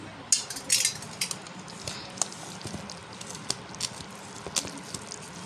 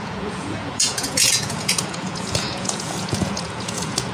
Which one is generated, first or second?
second